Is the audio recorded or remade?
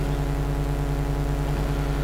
recorded